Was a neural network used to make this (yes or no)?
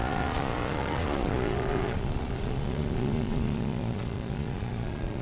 yes